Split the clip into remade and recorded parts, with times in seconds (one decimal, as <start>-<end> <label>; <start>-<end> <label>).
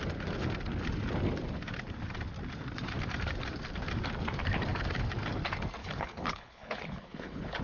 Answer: 0.0-5.8 recorded; 5.8-7.6 remade